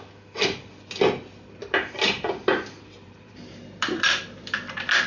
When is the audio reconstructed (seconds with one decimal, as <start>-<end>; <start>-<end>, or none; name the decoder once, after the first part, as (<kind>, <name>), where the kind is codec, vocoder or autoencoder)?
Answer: 1.6-4.5 (vocoder, BigVGAN v2)